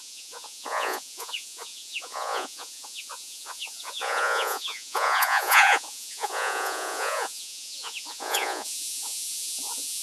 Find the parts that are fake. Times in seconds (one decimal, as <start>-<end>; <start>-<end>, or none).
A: 0.0-10.0